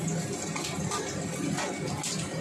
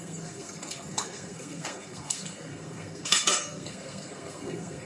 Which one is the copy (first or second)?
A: second